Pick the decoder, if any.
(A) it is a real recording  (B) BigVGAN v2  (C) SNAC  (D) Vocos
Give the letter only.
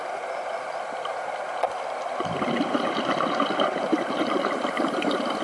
B